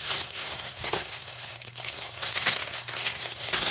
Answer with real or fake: fake